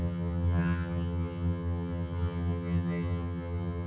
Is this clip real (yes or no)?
no